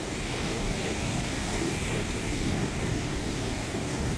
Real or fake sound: fake